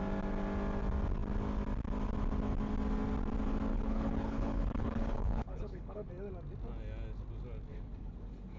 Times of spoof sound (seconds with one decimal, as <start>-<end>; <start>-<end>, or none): 3.7-6.1; 7.7-8.6